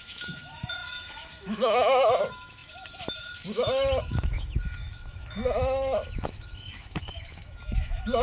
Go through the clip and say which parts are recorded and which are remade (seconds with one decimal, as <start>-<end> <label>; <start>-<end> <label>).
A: 0.0-8.2 remade